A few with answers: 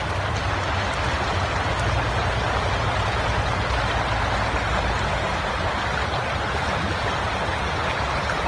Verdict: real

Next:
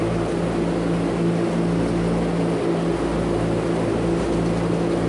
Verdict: real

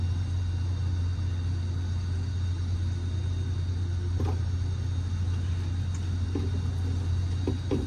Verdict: real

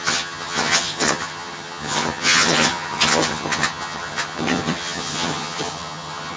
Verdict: fake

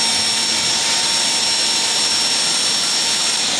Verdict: real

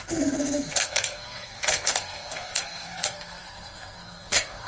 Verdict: fake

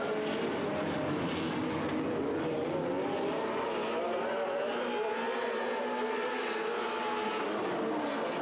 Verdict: real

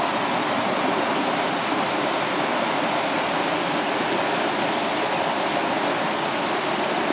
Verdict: real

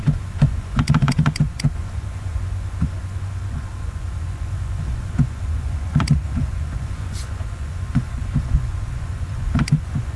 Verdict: fake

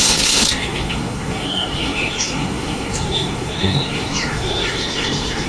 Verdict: fake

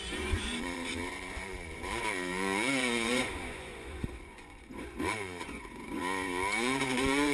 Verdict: fake